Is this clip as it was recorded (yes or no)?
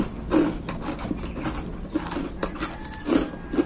yes